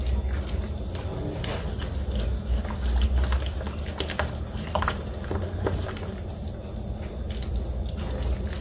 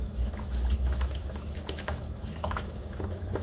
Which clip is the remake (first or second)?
second